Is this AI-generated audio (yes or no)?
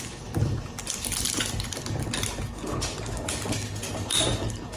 no